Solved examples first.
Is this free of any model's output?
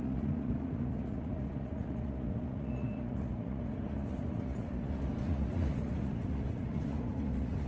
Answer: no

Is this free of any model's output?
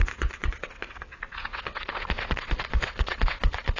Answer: no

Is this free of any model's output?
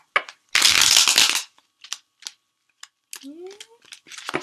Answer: yes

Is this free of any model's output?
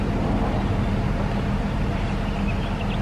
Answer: yes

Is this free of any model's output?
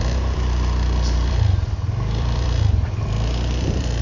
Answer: no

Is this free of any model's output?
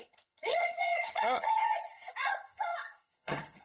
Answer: no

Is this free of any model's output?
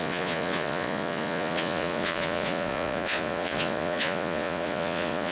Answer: no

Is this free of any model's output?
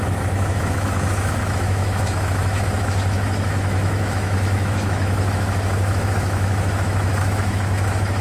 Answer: no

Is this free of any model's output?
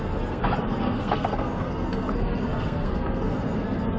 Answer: no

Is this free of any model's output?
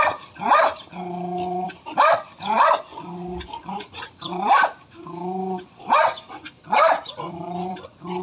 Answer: no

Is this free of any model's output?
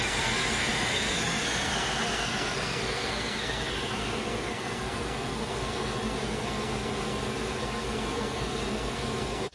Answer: no